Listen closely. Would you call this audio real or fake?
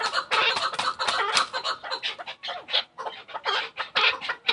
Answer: real